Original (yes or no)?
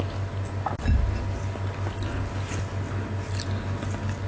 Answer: yes